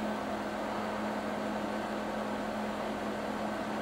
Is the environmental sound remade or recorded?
recorded